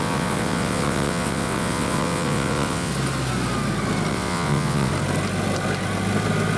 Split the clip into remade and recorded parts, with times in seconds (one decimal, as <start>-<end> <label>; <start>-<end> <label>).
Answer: 0.0-2.9 remade; 2.9-4.1 recorded; 4.1-4.9 remade; 4.9-6.6 recorded